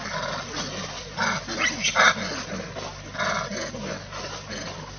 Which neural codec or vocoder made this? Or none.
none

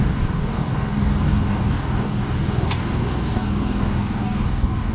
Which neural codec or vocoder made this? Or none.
codec, DAC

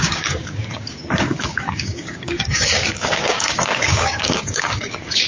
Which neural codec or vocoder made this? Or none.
codec, DAC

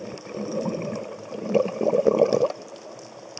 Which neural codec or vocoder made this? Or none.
none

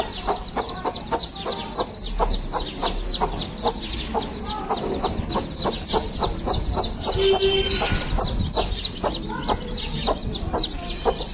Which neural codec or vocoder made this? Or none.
none